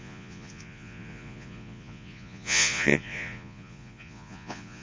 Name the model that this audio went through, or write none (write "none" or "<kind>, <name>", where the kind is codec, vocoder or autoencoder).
vocoder, Vocos